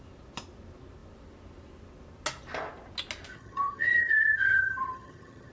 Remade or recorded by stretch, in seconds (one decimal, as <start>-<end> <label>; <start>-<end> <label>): 0.0-3.3 recorded; 3.3-5.5 remade